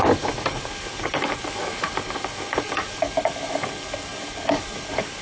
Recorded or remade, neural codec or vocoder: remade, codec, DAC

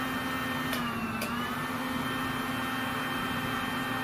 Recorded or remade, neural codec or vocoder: recorded